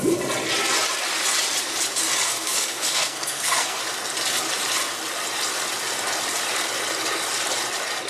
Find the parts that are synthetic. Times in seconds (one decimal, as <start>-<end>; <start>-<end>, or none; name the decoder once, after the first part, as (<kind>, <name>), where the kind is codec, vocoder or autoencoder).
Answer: 2.3-3.8 (codec, SNAC)